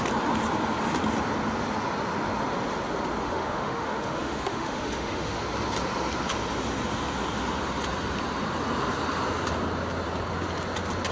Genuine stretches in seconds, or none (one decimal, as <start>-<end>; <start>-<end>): 0.0-3.2; 5.4-11.1